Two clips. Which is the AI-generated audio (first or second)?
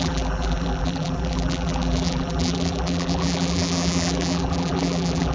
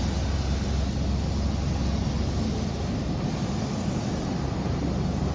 first